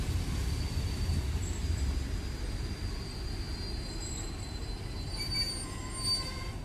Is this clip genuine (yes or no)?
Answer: yes